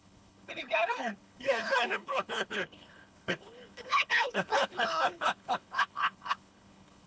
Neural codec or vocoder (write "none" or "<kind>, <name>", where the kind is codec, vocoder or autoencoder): codec, HILCodec